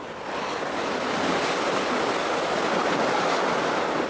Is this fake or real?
real